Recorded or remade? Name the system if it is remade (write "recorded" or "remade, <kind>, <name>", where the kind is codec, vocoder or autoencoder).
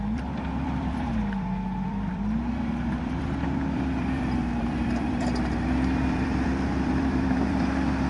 remade, vocoder, BigVGAN v2